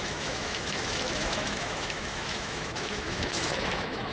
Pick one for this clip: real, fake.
fake